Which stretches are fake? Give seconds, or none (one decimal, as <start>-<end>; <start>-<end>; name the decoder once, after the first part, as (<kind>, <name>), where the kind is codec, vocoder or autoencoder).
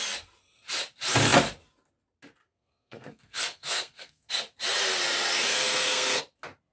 2.4-4.3 (codec, SNAC); 5.5-6.2